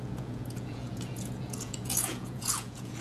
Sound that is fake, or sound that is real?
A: fake